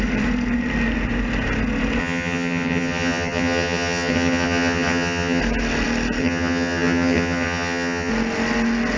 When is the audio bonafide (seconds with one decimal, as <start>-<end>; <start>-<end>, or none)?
0.0-2.0; 5.4-6.2; 8.1-9.0